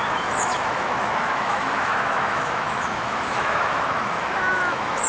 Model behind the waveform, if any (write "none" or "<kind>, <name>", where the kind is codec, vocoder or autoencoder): autoencoder, DAC-VAE